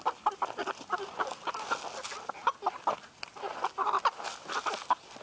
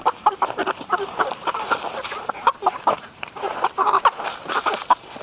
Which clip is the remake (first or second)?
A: second